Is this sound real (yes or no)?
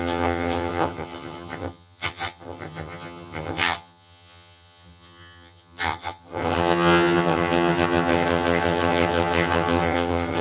no